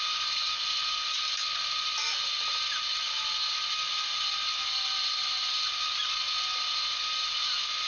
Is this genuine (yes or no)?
yes